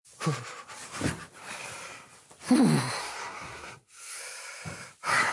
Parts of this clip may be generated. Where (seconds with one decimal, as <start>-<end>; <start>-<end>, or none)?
3.0-4.2